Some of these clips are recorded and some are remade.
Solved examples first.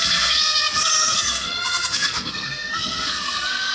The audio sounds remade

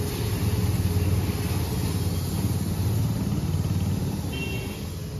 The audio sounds recorded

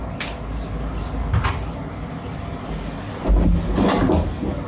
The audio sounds recorded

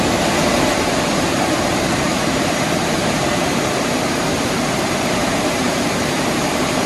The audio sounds remade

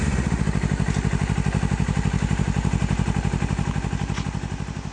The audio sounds recorded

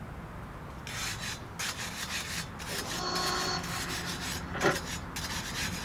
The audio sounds recorded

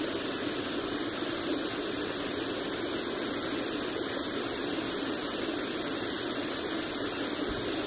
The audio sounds recorded